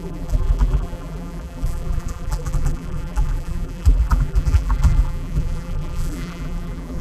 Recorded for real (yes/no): no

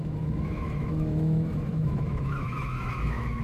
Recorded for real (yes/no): no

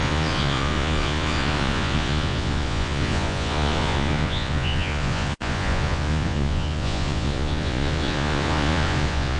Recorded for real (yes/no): no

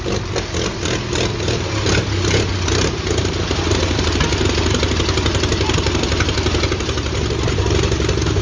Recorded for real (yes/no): yes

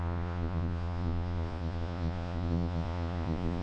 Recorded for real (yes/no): no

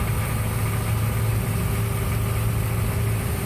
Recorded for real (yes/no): yes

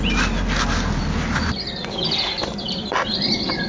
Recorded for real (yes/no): yes